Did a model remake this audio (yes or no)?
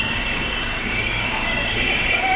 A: yes